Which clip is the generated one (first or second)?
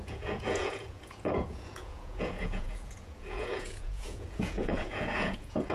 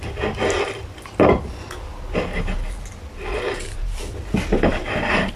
first